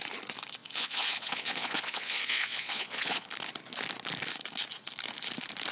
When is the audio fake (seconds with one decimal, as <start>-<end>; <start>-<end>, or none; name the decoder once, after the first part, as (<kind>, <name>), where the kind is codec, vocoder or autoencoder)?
0.6-3.3 (vocoder, Vocos)